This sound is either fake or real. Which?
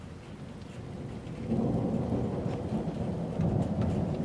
real